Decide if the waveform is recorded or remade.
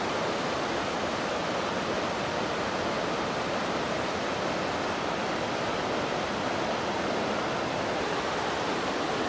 recorded